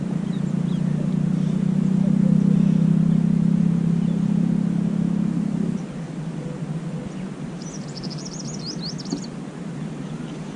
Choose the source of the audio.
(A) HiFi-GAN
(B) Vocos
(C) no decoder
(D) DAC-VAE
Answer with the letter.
C